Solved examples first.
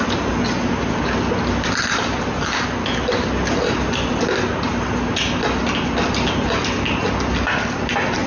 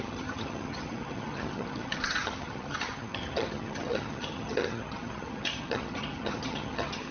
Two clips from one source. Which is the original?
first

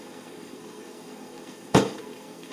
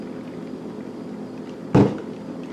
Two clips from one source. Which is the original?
second